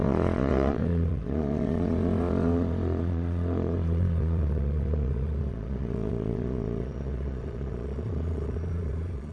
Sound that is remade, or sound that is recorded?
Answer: remade